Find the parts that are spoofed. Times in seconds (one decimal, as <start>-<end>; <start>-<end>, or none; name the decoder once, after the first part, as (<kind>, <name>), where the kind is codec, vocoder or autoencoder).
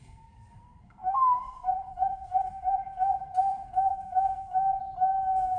0.0-4.8 (codec, SNAC)